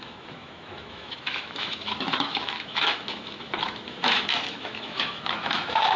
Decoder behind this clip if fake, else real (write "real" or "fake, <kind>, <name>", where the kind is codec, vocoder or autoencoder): fake, autoencoder, DAC-VAE